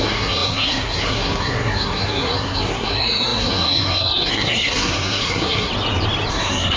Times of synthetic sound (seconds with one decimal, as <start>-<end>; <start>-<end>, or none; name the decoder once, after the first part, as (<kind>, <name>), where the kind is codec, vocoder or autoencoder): 0.0-5.7 (codec, SNAC); 6.3-6.8